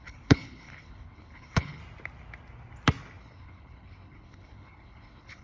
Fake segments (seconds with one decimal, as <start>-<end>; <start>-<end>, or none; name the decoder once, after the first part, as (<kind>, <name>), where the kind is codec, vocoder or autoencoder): 0.0-1.8 (codec, HILCodec); 3.2-5.4